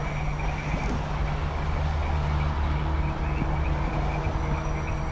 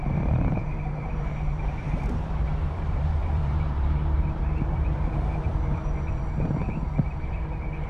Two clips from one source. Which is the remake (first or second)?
second